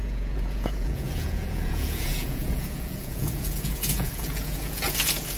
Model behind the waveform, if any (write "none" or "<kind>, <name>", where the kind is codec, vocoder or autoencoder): vocoder, Vocos